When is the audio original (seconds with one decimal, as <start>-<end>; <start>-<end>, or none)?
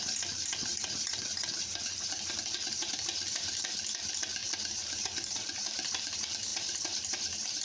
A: 4.4-5.0